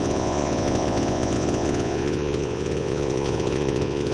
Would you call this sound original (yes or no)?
no